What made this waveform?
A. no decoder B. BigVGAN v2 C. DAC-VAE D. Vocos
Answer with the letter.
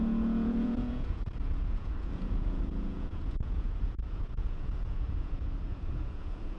D